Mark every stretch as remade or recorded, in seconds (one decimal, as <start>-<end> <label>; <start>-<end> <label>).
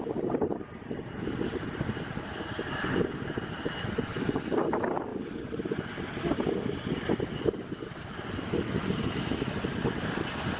0.0-10.6 recorded